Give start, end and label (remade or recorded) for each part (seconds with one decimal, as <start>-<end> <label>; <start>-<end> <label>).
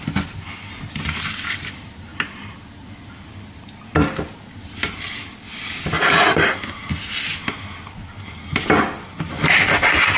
0.0-10.2 recorded